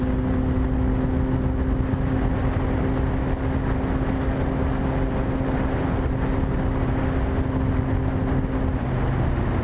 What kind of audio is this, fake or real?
real